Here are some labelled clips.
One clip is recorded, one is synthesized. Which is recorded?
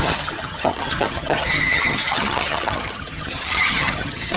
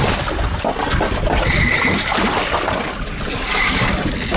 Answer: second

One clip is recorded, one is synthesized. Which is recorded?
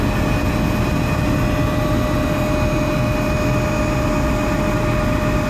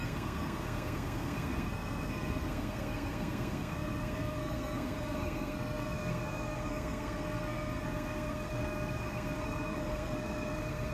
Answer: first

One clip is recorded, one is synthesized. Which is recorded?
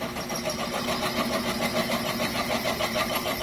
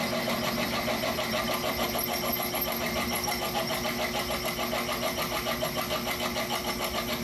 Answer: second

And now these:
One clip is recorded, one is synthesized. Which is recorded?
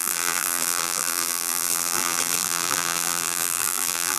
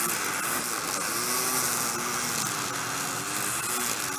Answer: second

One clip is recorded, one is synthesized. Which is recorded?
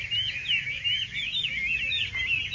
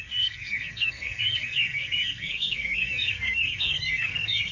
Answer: first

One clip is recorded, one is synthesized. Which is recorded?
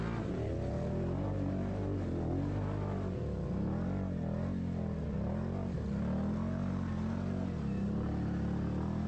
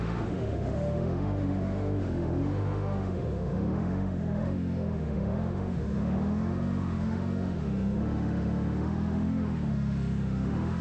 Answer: first